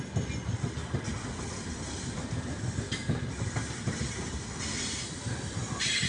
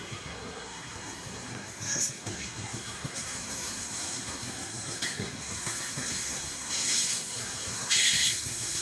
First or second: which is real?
first